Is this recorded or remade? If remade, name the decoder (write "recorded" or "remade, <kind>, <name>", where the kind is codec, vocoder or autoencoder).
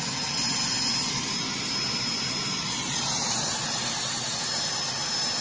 recorded